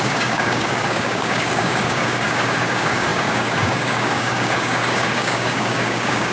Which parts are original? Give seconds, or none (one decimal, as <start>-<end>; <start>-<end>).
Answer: none